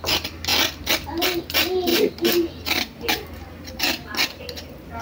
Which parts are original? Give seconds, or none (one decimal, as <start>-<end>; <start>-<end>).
0.0-5.0